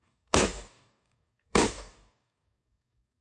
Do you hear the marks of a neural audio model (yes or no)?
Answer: yes